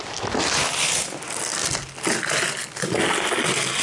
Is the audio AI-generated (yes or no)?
no